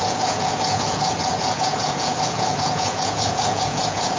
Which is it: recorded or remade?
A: remade